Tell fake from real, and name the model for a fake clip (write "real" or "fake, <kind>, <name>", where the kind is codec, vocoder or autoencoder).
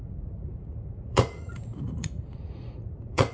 fake, vocoder, Vocos